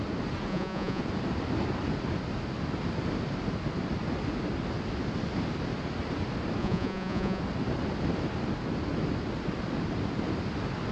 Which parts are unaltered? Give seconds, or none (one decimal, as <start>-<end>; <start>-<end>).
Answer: 0.0-0.5; 1.0-6.6; 7.4-10.9